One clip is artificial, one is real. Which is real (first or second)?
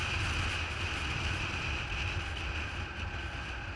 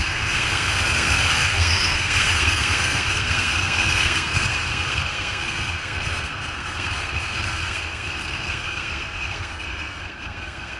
first